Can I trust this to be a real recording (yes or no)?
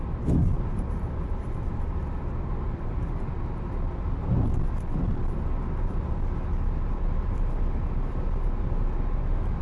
yes